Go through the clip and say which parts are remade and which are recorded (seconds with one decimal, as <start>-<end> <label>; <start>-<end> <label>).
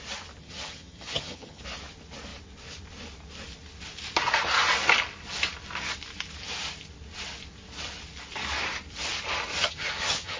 0.0-0.4 recorded; 0.4-1.6 remade; 1.6-9.6 recorded; 9.6-10.4 remade